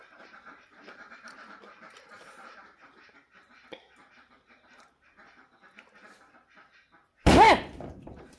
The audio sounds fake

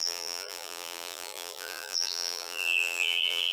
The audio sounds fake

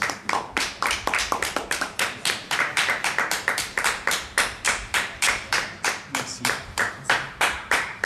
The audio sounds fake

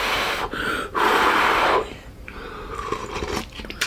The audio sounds fake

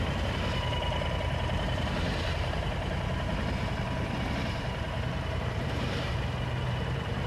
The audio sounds fake